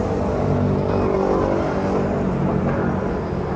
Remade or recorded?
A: recorded